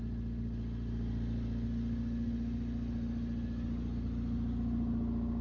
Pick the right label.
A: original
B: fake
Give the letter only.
A